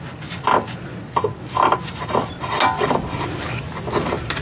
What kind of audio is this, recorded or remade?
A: recorded